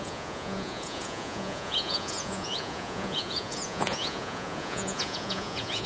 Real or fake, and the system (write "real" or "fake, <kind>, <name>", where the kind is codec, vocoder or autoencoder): fake, vocoder, Vocos